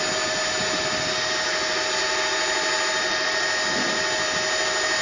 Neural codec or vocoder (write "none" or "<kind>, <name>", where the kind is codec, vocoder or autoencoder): none